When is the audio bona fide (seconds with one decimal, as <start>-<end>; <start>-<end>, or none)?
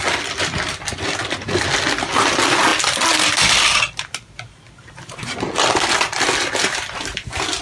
0.0-7.6